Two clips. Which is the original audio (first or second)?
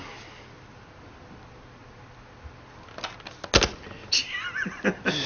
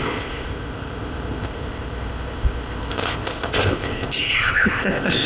first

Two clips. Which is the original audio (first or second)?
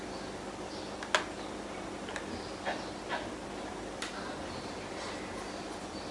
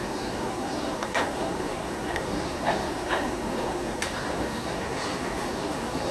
first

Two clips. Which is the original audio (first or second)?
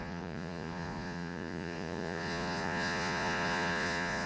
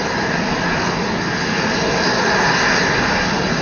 second